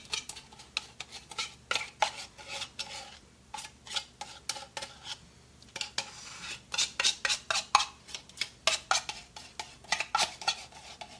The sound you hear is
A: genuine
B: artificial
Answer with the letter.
A